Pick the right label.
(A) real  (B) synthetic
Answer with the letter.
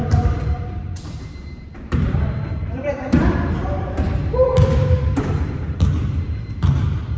B